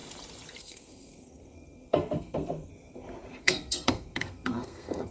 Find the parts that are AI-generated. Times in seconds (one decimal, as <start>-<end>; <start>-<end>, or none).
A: 0.6-2.7; 3.4-5.1